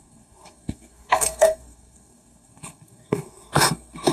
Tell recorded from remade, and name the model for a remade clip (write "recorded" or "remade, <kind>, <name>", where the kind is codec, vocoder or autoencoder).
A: remade, codec, SNAC